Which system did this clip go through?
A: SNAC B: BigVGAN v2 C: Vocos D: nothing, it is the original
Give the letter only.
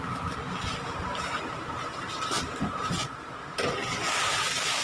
D